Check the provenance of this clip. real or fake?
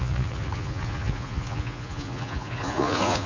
fake